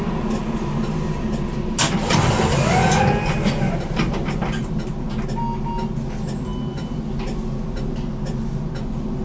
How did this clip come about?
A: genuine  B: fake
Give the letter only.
A